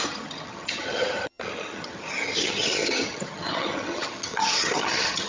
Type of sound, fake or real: fake